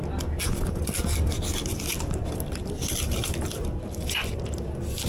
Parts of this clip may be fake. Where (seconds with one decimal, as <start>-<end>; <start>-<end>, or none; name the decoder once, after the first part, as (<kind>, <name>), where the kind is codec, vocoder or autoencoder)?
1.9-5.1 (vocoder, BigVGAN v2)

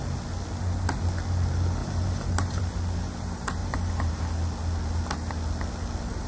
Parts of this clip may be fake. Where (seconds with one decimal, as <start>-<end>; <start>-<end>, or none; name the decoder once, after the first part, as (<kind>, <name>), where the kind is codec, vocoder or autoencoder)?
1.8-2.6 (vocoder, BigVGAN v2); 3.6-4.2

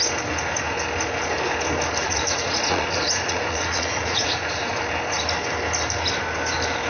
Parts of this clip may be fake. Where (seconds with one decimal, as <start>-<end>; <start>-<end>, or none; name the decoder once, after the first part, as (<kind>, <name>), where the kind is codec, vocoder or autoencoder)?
2.0-4.7 (vocoder, Vocos)

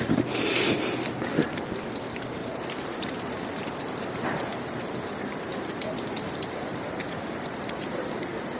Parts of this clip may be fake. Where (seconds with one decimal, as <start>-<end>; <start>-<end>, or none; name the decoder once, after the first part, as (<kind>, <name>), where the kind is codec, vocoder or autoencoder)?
0.0-1.3 (vocoder, BigVGAN v2); 2.0-8.6

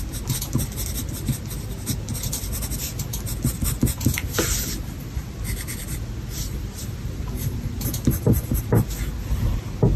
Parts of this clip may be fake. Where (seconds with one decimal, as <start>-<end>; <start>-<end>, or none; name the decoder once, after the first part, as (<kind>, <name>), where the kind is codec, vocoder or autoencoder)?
none